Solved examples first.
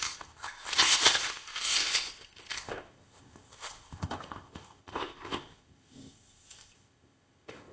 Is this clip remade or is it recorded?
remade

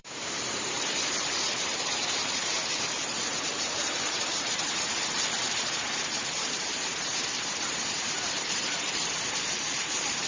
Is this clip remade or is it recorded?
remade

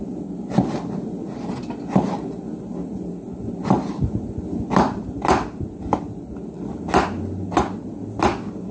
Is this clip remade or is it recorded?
recorded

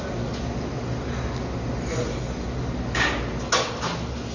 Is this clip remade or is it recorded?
recorded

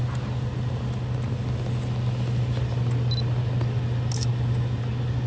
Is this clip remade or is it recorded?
recorded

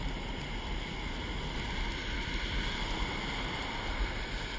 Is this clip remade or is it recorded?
recorded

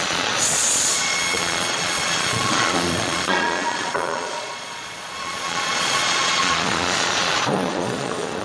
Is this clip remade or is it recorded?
remade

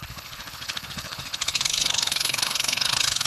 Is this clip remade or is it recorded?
remade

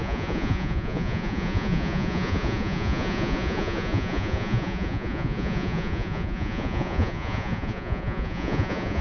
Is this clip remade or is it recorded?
remade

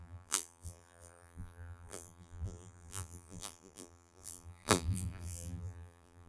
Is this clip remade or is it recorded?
remade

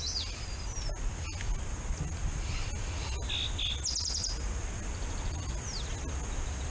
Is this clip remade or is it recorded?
recorded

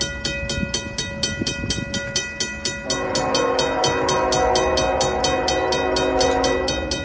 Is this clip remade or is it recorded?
recorded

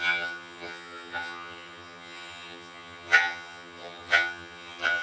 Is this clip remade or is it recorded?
remade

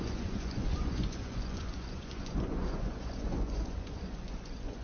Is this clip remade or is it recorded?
remade